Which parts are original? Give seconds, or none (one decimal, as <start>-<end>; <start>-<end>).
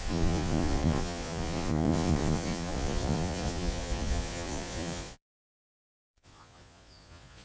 none